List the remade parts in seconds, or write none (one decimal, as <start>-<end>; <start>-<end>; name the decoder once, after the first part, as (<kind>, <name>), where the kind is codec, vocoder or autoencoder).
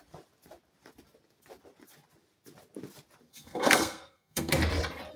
3.3-4.5 (codec, SNAC)